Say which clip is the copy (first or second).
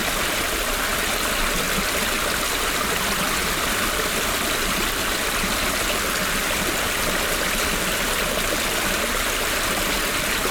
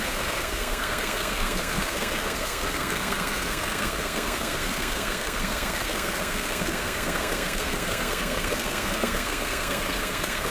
second